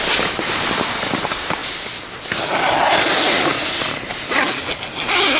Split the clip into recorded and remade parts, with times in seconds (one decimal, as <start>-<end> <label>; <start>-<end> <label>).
0.0-3.5 recorded; 3.5-4.3 remade; 4.3-5.4 recorded